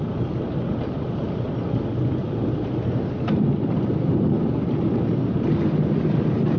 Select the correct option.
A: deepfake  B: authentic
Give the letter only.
B